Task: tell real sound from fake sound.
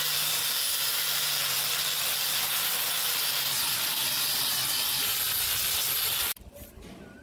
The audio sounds real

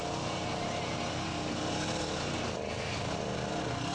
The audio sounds real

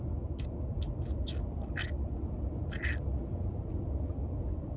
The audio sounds real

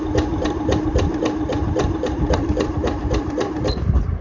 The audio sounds fake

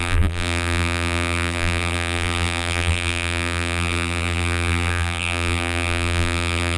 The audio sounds fake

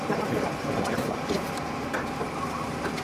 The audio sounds real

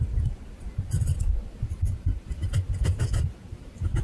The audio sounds fake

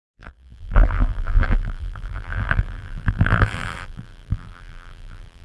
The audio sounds fake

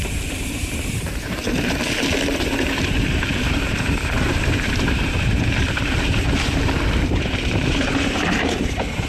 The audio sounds fake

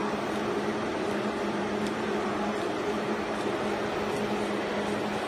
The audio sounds real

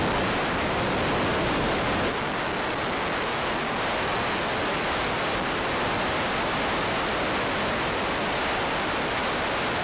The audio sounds real